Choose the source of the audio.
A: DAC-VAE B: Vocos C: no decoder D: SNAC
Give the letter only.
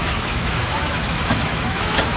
A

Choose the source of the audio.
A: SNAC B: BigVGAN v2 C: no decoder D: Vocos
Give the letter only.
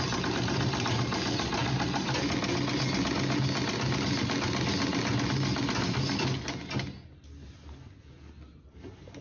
C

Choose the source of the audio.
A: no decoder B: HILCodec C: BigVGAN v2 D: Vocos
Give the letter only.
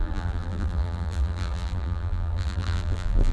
C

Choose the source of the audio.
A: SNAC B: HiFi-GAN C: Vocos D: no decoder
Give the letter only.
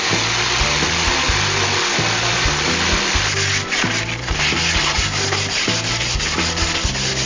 D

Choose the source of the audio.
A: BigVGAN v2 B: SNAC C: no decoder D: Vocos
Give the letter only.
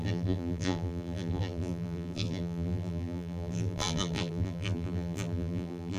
A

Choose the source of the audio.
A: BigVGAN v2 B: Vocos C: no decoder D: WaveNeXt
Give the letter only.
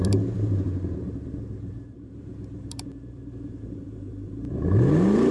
A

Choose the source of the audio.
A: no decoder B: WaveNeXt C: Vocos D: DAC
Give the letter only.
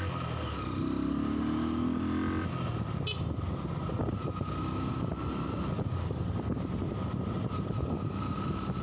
A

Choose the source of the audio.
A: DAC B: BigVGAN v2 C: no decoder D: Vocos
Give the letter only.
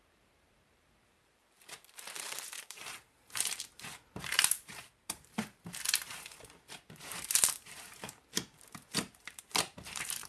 B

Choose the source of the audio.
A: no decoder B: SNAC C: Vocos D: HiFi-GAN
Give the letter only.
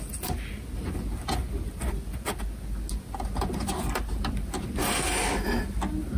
A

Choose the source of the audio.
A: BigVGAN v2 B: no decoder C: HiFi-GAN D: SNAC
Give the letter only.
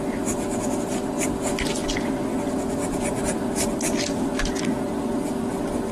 B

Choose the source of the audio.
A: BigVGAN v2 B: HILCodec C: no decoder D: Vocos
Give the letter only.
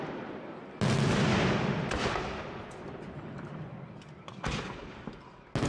C